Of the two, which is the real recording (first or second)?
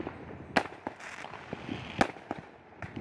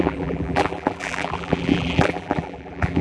first